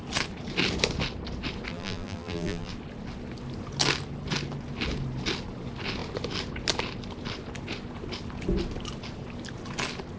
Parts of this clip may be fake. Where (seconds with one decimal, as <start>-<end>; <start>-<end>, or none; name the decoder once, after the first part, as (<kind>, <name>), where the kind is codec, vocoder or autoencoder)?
1.7-2.7 (vocoder, BigVGAN v2)